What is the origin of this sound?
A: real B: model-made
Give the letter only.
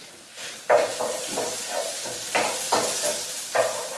A